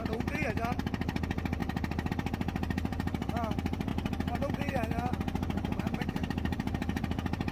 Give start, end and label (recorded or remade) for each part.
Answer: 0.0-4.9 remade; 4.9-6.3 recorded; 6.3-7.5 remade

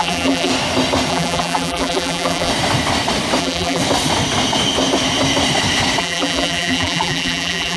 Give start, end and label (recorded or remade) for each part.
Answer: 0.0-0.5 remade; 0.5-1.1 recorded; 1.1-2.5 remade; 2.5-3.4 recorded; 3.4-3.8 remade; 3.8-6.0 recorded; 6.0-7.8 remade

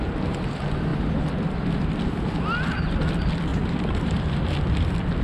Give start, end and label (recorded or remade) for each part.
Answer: 0.0-3.5 recorded; 3.5-4.2 remade; 4.2-5.2 recorded